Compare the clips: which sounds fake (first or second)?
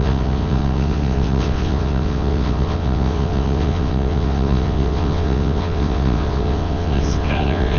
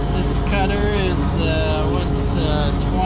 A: first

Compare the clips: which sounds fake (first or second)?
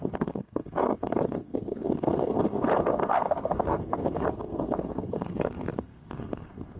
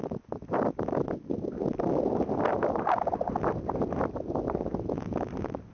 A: first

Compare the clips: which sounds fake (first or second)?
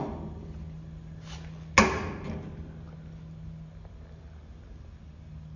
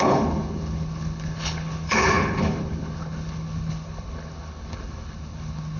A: second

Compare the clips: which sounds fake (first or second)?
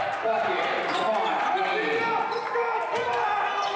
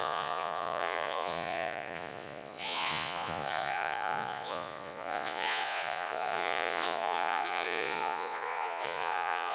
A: second